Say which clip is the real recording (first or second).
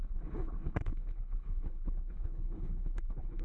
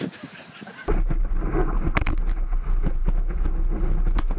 second